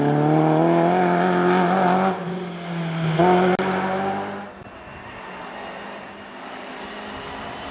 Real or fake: real